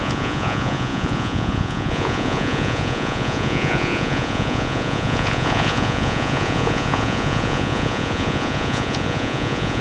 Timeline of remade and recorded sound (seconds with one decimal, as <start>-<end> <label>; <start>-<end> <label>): 0.0-9.8 remade